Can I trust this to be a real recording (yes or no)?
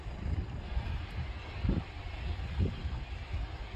yes